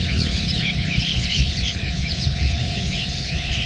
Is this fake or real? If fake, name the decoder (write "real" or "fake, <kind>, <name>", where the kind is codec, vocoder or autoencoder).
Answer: fake, codec, HILCodec